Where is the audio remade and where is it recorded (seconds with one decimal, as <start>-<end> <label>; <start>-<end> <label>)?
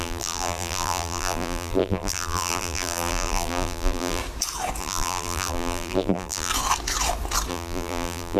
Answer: 0.0-4.2 remade; 4.2-4.8 recorded; 4.8-6.5 remade; 6.5-7.5 recorded; 7.5-8.4 remade